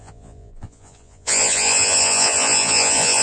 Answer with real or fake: fake